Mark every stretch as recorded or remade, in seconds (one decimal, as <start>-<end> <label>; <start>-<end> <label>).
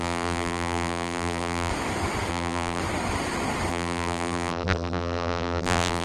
0.0-1.7 remade; 1.7-2.3 recorded; 2.3-2.8 remade; 2.8-3.7 recorded; 3.7-6.0 remade